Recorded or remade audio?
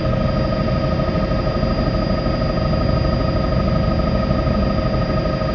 recorded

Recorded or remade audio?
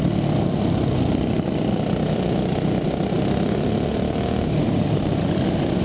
recorded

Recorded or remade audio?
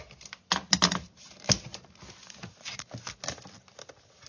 recorded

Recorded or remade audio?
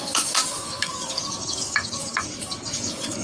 remade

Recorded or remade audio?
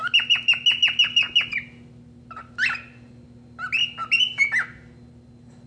recorded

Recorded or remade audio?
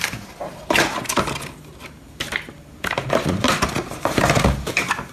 remade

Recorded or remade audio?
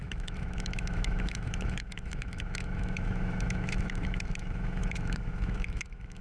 remade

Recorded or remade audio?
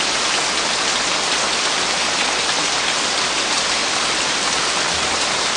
recorded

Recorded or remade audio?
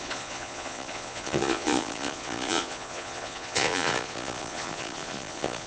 remade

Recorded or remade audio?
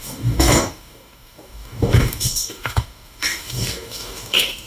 remade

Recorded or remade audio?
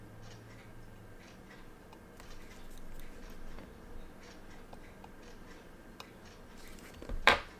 recorded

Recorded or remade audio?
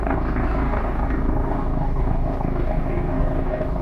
remade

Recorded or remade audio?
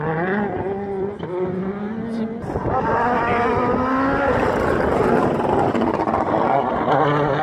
recorded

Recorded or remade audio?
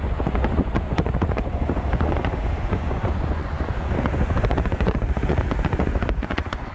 remade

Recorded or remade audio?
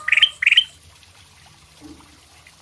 recorded